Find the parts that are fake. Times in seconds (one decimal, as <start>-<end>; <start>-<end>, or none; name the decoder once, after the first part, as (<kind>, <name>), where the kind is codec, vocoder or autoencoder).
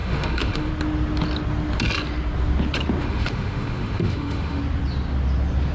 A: 0.0-0.7 (autoencoder, DAC-VAE); 3.0-4.6